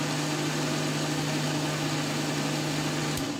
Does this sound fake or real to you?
real